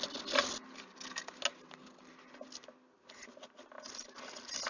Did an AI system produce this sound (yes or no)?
no